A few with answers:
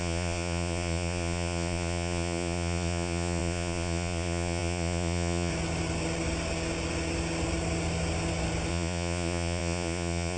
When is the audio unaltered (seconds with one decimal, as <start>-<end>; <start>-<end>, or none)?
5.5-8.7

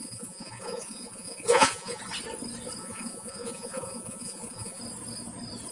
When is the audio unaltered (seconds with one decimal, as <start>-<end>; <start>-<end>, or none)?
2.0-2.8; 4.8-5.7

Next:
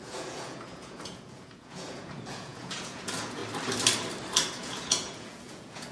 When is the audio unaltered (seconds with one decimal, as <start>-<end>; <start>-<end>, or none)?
3.4-4.5

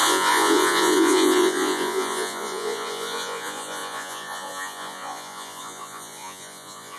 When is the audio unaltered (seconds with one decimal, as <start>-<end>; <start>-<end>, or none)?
none

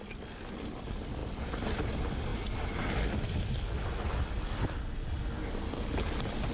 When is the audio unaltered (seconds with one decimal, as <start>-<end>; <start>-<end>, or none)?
0.0-6.5

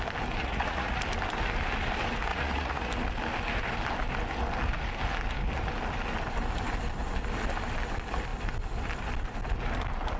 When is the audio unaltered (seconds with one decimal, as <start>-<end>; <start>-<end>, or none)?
0.0-0.4; 1.0-2.3; 2.9-10.2

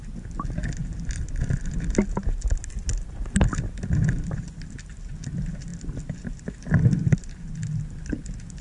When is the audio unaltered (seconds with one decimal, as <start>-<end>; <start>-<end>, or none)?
0.0-8.6

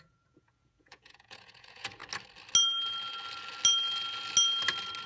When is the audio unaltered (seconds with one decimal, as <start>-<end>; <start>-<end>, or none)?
2.0-5.1